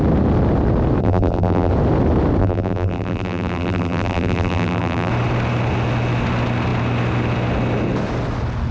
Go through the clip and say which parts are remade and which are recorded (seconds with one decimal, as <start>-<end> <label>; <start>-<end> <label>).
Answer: 0.0-1.0 recorded; 1.0-1.7 remade; 1.7-2.4 recorded; 2.4-5.1 remade; 5.1-8.7 recorded